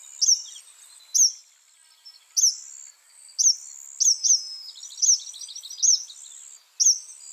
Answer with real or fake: real